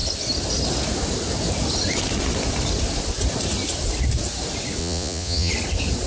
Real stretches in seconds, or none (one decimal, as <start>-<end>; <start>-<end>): 0.0-4.8; 5.5-6.1